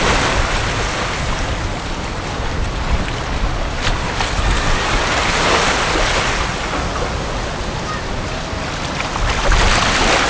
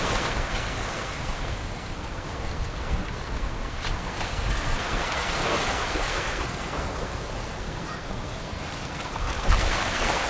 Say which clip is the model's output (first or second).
second